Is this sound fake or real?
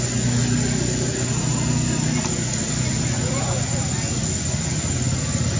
real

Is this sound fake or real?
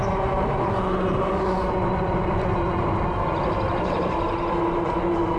real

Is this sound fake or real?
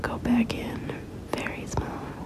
real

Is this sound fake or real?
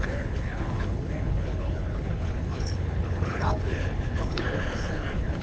fake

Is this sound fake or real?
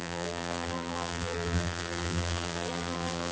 fake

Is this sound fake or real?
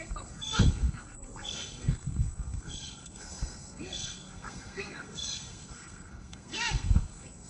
fake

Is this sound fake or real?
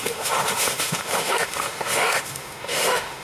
fake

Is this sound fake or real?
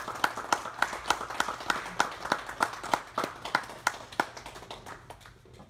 real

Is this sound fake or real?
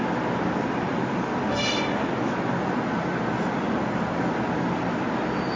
real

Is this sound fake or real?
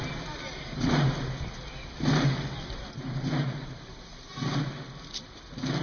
real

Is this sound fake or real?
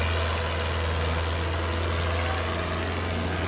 real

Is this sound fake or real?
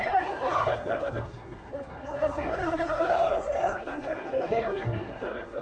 fake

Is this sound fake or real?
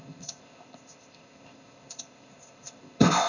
fake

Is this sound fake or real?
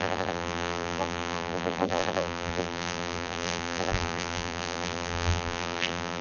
fake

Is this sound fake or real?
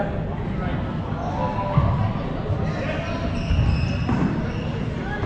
real